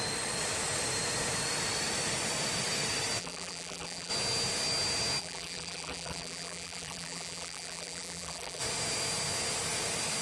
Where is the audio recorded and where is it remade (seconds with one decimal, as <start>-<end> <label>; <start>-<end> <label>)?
0.0-3.2 recorded; 3.2-4.1 remade; 4.1-5.2 recorded; 5.2-8.6 remade; 8.6-10.2 recorded